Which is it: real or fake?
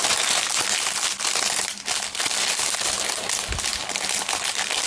real